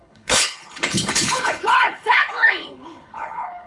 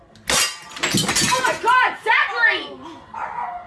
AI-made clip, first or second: first